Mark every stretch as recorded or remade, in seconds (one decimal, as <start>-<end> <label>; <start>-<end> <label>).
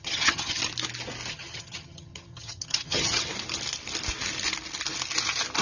0.0-0.6 remade; 0.6-1.3 recorded; 1.3-3.3 remade; 3.3-5.6 recorded